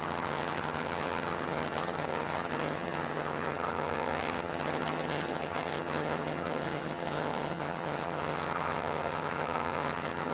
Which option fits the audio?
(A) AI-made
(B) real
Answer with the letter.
A